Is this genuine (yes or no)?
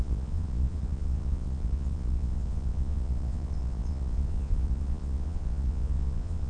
no